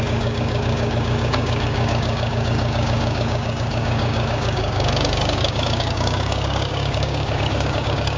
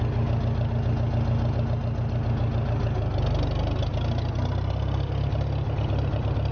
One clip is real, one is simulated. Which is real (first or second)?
second